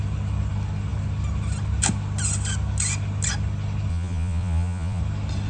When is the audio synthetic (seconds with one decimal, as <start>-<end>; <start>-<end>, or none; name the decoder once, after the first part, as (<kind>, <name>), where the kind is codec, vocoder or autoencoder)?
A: 3.9-5.0 (vocoder, Vocos)